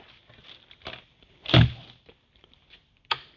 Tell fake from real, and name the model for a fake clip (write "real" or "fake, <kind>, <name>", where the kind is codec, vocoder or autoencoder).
real